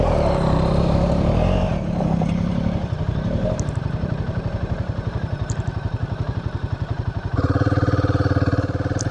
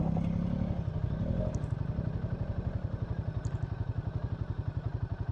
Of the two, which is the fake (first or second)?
first